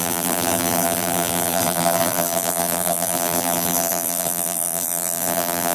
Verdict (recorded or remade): remade